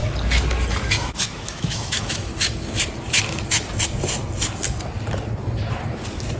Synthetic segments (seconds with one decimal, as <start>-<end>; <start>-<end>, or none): 0.9-2.3